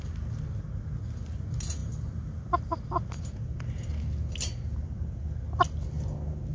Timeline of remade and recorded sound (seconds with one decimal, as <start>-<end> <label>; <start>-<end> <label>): 0.0-6.5 recorded